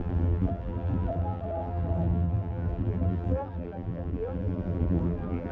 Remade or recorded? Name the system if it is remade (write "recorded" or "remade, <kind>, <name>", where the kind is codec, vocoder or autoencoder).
remade, vocoder, BigVGAN v2